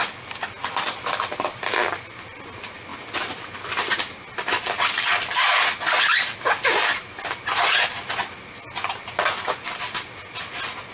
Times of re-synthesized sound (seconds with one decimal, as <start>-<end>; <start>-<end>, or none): none